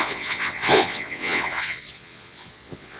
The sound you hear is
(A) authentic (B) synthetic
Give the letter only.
B